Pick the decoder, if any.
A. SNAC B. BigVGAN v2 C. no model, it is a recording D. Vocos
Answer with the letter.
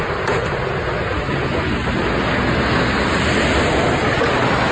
C